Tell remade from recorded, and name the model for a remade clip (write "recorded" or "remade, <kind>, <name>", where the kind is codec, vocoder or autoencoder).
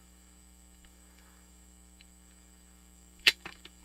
remade, autoencoder, DAC-VAE